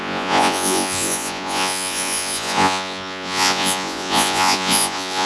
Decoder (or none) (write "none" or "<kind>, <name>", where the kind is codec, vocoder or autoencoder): vocoder, Vocos